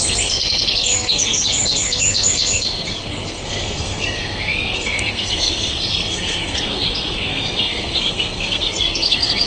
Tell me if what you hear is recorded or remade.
remade